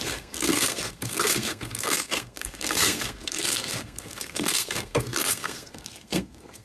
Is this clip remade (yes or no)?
yes